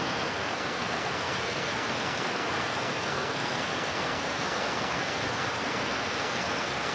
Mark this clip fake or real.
fake